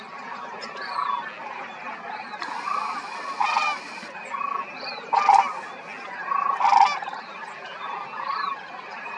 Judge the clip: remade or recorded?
recorded